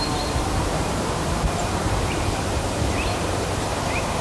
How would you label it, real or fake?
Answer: fake